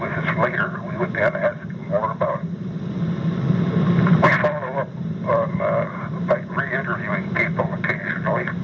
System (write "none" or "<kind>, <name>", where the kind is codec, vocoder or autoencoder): none